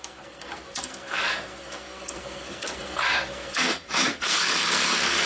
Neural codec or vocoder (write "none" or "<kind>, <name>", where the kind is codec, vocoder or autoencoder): codec, SNAC